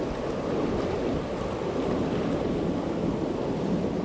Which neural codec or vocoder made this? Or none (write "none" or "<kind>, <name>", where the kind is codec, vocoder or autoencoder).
none